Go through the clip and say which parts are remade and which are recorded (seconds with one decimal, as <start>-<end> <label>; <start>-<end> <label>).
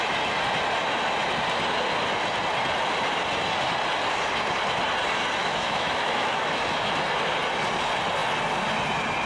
0.0-5.4 recorded; 5.4-6.9 remade; 6.9-9.3 recorded